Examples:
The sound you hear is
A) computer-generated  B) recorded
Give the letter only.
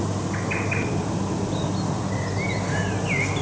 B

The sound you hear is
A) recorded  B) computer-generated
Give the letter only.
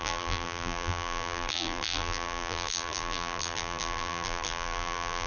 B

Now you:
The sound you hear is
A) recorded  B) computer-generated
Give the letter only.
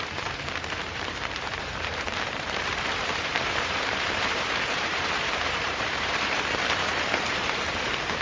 B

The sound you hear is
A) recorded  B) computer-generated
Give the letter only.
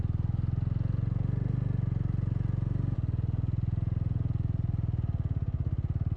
A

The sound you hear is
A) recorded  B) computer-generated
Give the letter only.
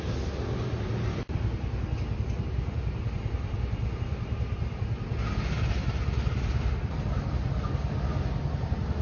A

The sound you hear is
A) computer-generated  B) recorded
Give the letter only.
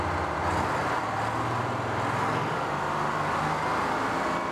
B